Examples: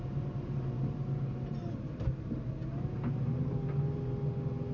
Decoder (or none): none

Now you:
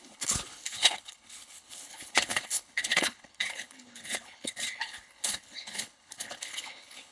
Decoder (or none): codec, HILCodec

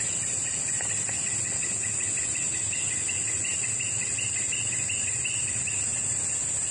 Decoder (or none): none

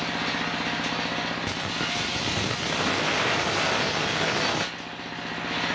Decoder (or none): none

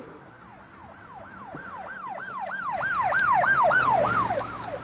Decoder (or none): none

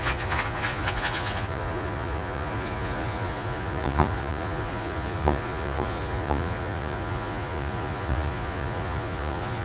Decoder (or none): vocoder, Vocos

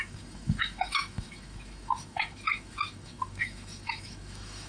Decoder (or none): autoencoder, DAC-VAE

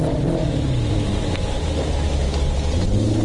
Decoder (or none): none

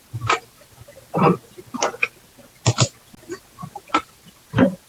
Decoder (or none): none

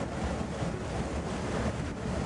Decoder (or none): none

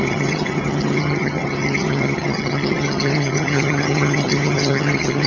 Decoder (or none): vocoder, HiFi-GAN